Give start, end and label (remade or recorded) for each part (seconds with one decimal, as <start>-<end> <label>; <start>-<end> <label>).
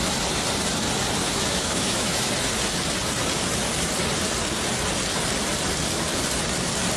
0.0-1.2 recorded; 1.2-2.3 remade; 2.3-7.0 recorded